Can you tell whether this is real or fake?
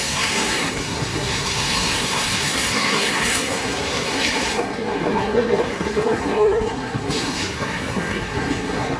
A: fake